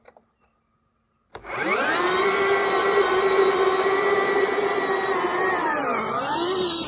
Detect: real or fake real